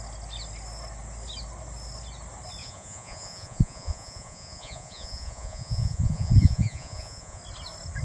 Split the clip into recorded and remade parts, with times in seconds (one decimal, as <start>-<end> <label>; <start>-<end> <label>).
0.0-2.6 recorded; 2.6-7.4 remade; 7.4-8.0 recorded